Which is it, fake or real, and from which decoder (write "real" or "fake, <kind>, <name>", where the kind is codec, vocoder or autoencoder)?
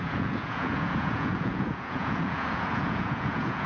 fake, vocoder, Vocos